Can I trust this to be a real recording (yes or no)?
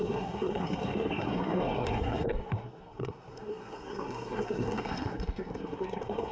no